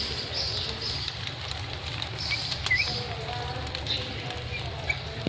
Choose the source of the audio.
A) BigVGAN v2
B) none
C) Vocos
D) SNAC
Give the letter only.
B